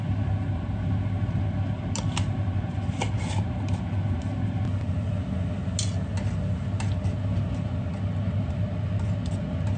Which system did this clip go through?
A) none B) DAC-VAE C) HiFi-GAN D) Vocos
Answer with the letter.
A